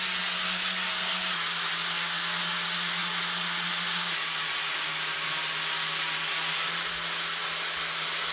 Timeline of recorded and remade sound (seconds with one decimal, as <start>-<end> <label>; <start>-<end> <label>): 0.0-8.3 recorded